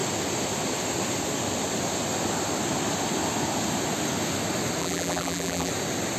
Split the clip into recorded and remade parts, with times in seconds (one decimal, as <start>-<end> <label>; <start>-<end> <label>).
0.0-4.8 recorded; 4.8-5.7 remade; 5.7-6.2 recorded